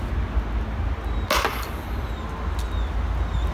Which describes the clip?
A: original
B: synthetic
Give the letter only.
A